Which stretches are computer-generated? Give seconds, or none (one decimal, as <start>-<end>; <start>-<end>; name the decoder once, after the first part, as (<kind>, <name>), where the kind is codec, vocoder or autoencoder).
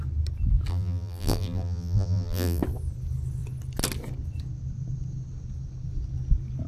0.7-2.6 (vocoder, BigVGAN v2)